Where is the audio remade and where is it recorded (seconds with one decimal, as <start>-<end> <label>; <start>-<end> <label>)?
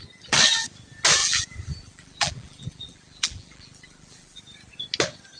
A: 0.0-1.2 recorded; 1.2-4.4 remade; 4.4-5.4 recorded